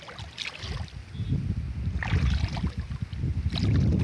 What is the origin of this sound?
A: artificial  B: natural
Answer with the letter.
B